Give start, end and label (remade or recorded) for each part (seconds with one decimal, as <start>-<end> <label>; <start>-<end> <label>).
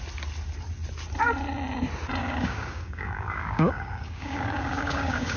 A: 0.0-2.2 recorded; 2.2-5.4 remade